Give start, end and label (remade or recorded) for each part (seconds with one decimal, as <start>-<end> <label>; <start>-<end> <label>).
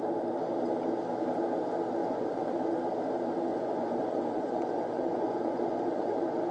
0.0-2.0 recorded; 2.0-2.5 remade; 2.5-3.5 recorded; 3.5-6.5 remade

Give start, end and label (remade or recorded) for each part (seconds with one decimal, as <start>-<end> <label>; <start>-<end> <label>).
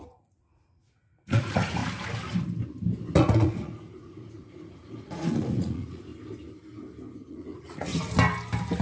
0.0-1.8 remade; 1.8-3.1 recorded; 3.1-6.1 remade; 6.1-7.3 recorded; 7.3-7.9 remade; 7.9-8.8 recorded